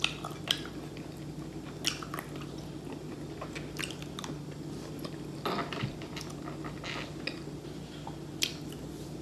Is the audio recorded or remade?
recorded